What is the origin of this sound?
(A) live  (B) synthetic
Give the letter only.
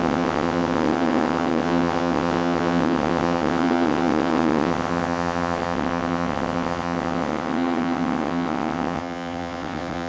B